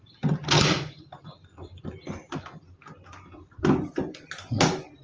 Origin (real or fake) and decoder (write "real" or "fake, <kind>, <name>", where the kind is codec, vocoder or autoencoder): real